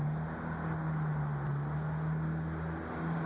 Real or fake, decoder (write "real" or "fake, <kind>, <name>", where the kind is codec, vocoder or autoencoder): real